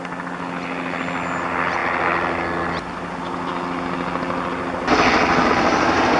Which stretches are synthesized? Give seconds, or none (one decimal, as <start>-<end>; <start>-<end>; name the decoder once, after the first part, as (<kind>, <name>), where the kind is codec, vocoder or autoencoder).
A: none